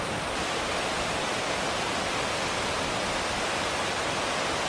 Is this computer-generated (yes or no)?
no